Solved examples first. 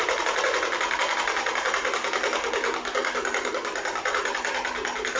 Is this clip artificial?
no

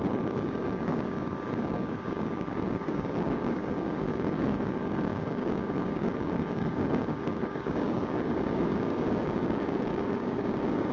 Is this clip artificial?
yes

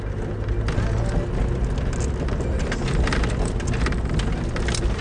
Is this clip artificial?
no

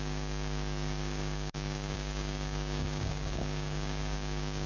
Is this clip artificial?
yes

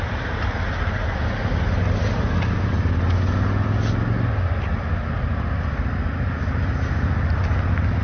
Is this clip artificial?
no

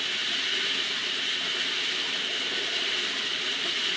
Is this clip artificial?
no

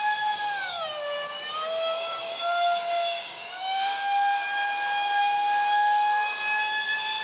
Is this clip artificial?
yes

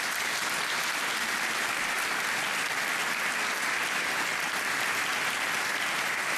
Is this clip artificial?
no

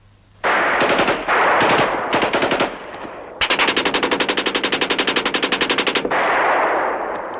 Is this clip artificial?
no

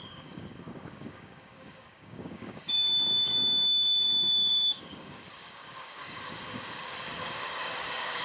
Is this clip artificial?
yes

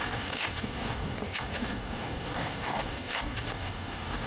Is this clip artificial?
yes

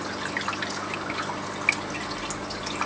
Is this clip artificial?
no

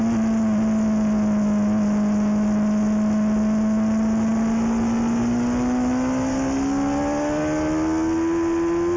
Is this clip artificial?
no